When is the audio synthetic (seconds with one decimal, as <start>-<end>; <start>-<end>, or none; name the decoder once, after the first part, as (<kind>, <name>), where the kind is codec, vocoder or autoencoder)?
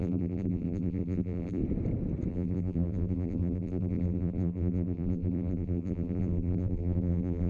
0.0-1.6 (vocoder, BigVGAN v2); 2.3-7.5